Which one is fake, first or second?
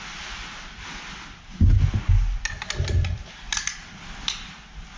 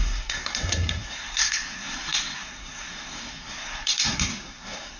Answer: second